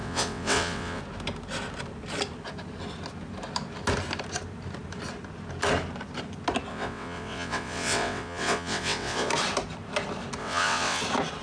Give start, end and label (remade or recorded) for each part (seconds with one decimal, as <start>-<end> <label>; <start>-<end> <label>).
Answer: 0.0-1.0 remade; 1.0-6.7 recorded; 6.7-9.3 remade; 9.3-10.4 recorded; 10.4-11.0 remade; 11.0-11.4 recorded